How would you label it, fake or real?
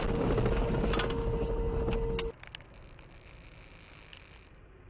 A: real